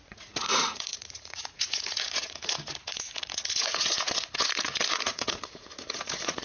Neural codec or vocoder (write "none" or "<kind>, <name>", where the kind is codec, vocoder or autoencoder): vocoder, Vocos